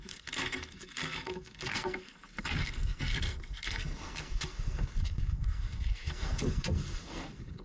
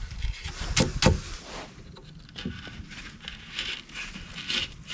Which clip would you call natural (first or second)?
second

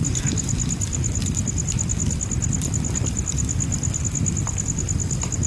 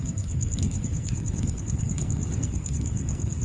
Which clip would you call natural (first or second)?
first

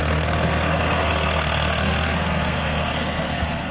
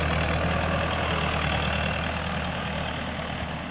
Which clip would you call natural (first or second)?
second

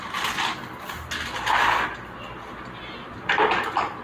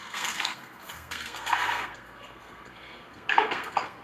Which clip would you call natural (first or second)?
first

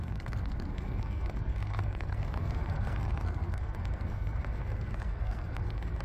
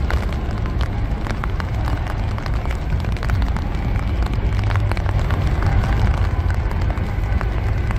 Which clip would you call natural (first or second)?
second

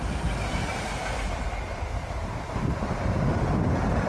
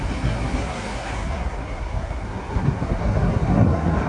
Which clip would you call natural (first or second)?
first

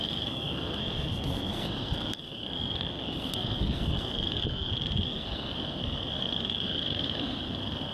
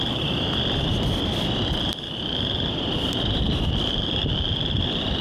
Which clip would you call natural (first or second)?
second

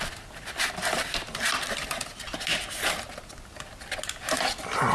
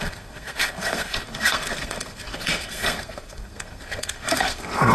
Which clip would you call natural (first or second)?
first